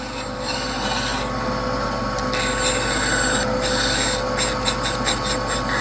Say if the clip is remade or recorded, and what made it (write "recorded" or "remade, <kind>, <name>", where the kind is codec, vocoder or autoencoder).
recorded